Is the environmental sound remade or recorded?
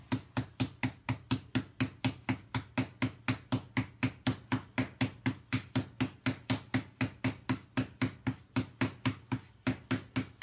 recorded